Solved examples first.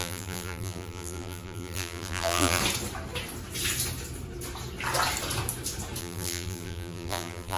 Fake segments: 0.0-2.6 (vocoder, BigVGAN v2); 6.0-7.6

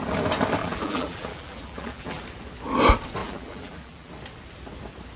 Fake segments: 0.6-2.2 (vocoder, BigVGAN v2); 3.2-4.1

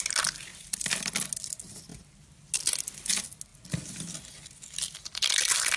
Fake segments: 0.5-1.2 (vocoder, BigVGAN v2)

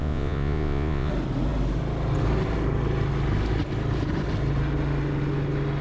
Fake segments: 0.0-1.1 (vocoder, Vocos)

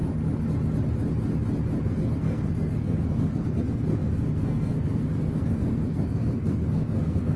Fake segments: 1.8-7.4 (codec, SNAC)